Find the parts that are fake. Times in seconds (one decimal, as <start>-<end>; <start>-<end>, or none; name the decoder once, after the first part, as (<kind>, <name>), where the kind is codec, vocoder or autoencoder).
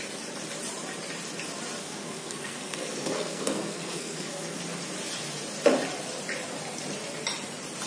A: 1.8-4.6 (codec, SNAC)